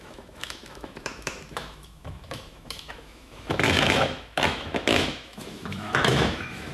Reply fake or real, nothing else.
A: fake